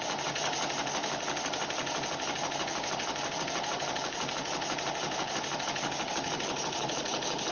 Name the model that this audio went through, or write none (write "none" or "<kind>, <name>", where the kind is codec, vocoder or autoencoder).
none